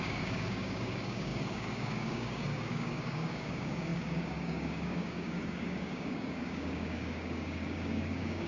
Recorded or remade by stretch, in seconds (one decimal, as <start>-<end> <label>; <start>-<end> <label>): 0.0-8.5 remade